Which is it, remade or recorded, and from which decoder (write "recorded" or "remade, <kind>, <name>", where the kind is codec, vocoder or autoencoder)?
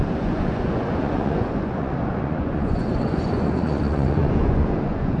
remade, vocoder, Vocos